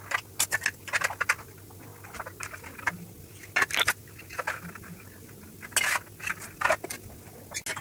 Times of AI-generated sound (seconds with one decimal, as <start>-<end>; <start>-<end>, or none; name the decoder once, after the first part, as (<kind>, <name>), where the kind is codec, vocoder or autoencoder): none